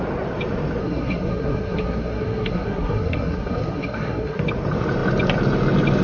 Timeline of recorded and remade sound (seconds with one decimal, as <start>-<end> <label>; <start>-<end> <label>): 0.0-0.8 recorded; 0.8-4.4 remade; 4.4-6.0 recorded